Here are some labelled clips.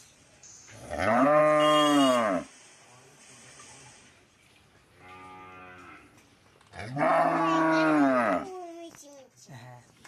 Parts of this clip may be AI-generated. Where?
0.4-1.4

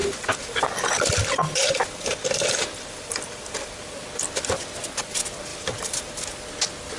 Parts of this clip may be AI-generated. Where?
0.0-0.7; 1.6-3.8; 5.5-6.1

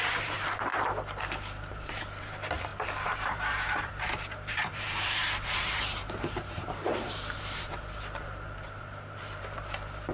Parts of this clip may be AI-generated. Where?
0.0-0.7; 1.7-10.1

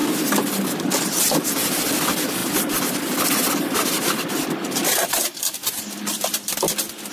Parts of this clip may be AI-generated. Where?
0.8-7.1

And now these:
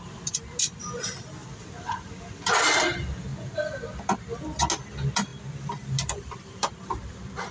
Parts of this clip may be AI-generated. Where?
1.4-2.4; 5.3-7.5

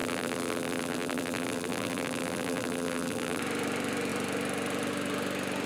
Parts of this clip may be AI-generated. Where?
0.0-3.4

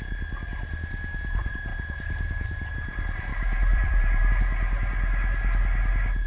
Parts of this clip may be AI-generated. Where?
3.3-4.3